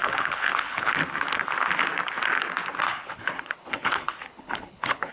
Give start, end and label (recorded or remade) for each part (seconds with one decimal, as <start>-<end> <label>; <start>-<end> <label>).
0.0-0.9 remade; 0.9-2.9 recorded; 2.9-5.1 remade